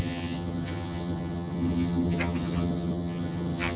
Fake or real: fake